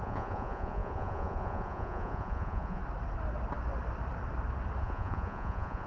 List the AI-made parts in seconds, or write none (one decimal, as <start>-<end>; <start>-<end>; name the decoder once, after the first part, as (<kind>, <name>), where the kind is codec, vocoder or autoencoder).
0.0-2.8 (vocoder, Vocos); 4.8-5.9